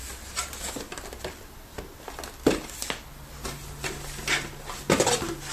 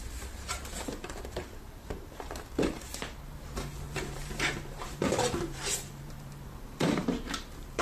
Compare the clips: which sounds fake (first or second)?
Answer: second